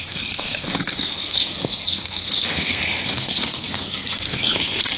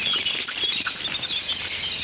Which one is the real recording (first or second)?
second